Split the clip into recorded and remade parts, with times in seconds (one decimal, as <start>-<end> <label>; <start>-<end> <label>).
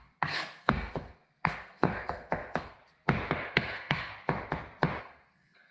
0.0-2.8 remade; 2.8-3.5 recorded; 3.5-4.1 remade; 4.1-5.0 recorded; 5.0-5.7 remade